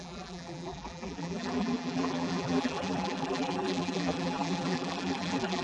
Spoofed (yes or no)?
yes